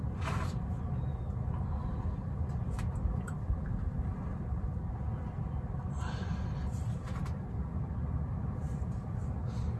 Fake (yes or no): no